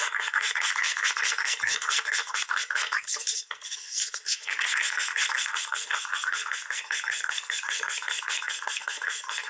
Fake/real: fake